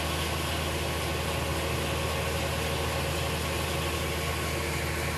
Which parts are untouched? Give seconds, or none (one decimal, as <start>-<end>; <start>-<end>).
0.0-5.2